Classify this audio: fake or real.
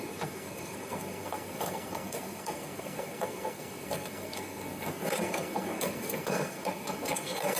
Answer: fake